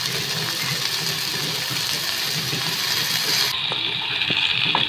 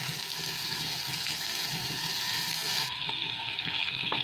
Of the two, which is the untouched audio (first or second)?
first